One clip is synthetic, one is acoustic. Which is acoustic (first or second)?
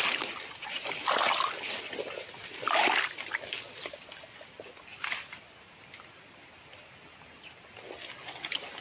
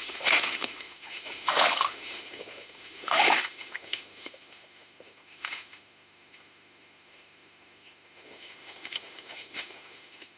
first